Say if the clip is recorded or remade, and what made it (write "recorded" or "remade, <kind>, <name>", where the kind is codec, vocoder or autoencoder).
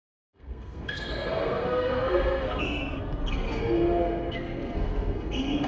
remade, codec, SNAC